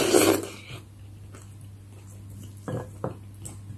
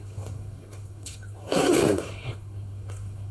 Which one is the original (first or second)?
first